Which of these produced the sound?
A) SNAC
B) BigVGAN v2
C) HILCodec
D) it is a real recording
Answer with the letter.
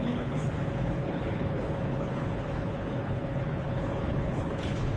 C